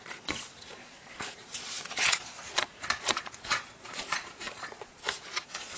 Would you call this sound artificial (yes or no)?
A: yes